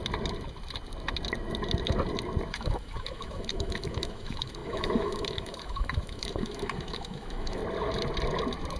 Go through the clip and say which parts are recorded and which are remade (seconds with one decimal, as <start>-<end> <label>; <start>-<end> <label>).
0.0-2.5 recorded; 2.5-7.6 remade; 7.6-8.8 recorded